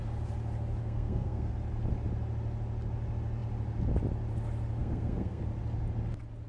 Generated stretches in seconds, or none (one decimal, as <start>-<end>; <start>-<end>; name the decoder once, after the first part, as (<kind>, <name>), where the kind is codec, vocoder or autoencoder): 0.8-1.5 (codec, SNAC); 4.8-5.4